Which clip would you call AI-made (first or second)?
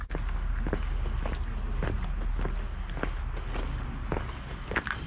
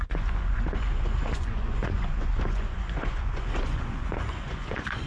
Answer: second